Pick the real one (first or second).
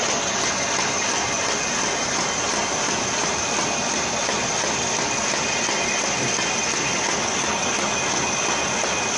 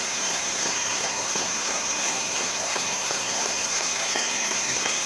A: first